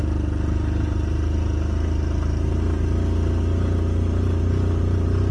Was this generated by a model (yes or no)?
no